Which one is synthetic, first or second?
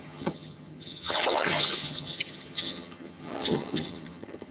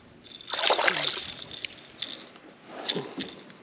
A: first